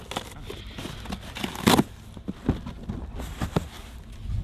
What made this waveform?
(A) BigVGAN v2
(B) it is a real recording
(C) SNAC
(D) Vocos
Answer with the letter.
B